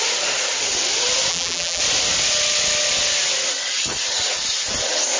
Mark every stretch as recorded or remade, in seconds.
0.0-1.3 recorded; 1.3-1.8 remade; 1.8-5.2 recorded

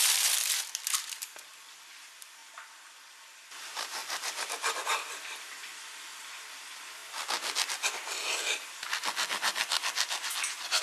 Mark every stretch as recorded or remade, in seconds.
0.0-2.4 remade; 2.4-3.1 recorded; 3.1-7.0 remade; 7.0-10.8 recorded

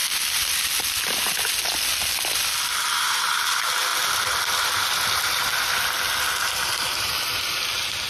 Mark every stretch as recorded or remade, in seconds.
0.0-0.6 remade; 0.6-3.9 recorded; 3.9-7.1 remade; 7.1-8.1 recorded

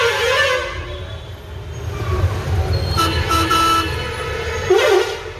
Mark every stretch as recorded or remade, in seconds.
0.0-0.6 recorded; 0.6-2.2 remade; 2.2-5.4 recorded

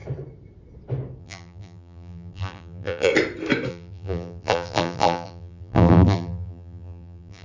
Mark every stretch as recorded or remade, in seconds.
0.0-1.2 recorded; 1.2-3.1 remade; 3.1-3.7 recorded; 3.7-7.4 remade

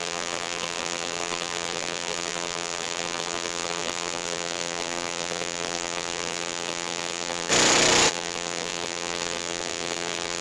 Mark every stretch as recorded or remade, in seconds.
0.0-7.5 remade; 7.5-8.1 recorded; 8.1-10.4 remade

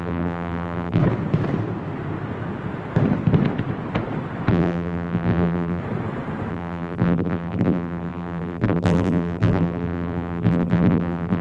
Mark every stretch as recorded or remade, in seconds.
0.0-1.0 remade; 1.0-4.5 recorded; 4.5-5.8 remade; 5.8-6.5 recorded; 6.5-11.4 remade

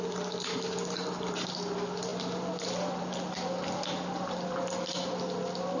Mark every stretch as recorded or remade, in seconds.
0.0-5.8 recorded